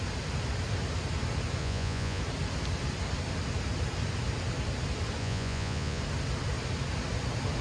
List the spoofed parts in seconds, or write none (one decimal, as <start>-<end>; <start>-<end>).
1.6-2.2; 5.2-6.0